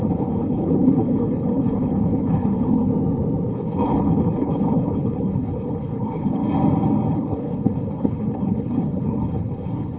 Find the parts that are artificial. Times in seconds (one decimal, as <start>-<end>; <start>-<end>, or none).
0.0-2.9; 3.5-6.4; 7.1-10.0